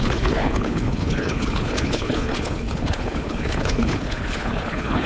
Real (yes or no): no